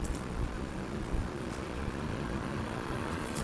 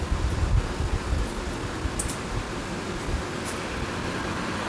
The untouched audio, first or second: second